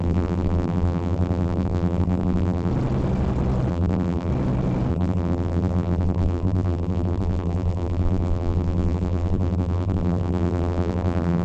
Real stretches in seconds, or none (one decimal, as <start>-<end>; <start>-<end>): 2.7-3.7; 4.3-4.9